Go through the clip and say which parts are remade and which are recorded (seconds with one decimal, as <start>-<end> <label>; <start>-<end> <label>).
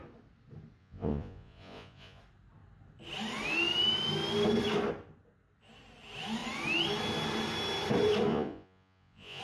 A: 0.0-0.8 recorded; 0.8-2.2 remade; 2.2-8.3 recorded; 8.3-9.4 remade